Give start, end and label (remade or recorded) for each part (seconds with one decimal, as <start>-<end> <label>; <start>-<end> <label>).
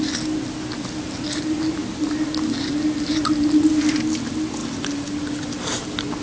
0.0-6.2 recorded